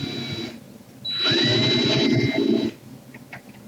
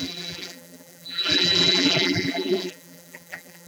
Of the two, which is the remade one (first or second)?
second